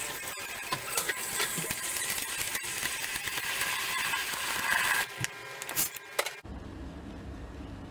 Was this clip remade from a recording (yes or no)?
no